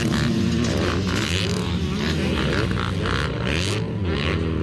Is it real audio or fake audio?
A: real